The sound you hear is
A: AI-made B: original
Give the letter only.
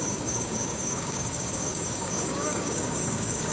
A